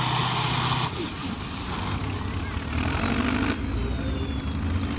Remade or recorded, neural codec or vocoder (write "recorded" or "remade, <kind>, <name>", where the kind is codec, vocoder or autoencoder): recorded